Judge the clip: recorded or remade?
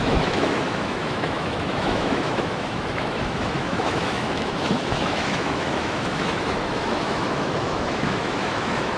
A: remade